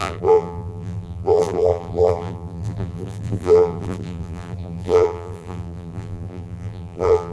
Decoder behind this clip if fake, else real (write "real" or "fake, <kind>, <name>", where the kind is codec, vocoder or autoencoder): fake, vocoder, BigVGAN v2